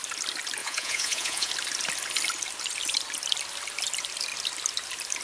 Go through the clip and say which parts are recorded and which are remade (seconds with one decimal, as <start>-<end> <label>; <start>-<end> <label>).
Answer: 0.0-0.6 recorded; 0.6-1.5 remade; 1.5-5.2 recorded